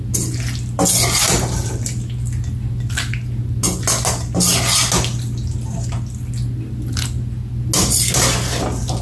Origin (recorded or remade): recorded